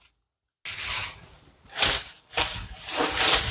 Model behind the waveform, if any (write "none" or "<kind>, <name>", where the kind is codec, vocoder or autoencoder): none